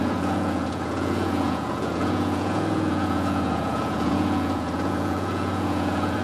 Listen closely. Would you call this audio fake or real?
fake